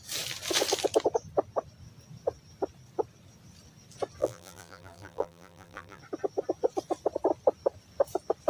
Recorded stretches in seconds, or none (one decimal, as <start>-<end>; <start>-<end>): 0.0-4.2; 6.0-8.5